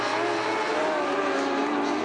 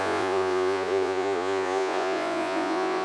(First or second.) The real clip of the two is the first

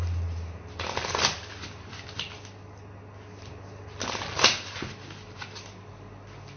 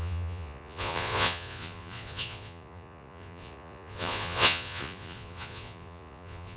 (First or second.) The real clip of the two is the first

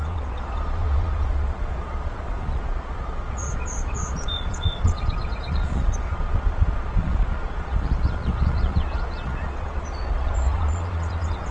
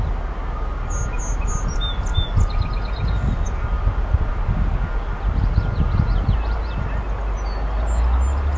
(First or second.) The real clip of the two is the second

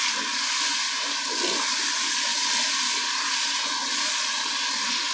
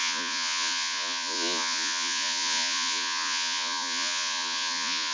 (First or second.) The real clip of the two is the first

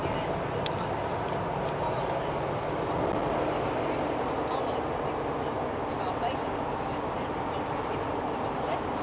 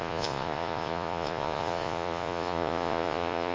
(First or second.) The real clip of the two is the first